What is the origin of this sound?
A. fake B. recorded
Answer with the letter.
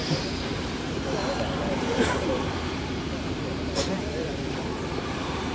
A